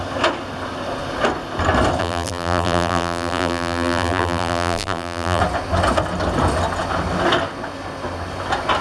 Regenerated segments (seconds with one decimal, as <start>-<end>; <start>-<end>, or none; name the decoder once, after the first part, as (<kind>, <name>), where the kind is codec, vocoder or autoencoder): 2.0-5.4 (vocoder, BigVGAN v2)